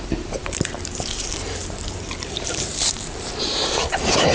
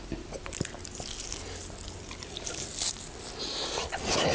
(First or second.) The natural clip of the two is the second